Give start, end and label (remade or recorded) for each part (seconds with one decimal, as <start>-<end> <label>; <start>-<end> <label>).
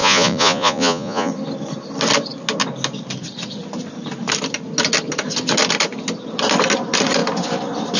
0.0-1.3 remade; 1.3-8.0 recorded